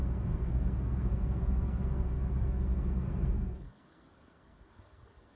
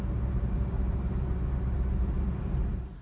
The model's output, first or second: first